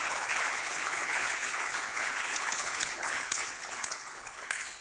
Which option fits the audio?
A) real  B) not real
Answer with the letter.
B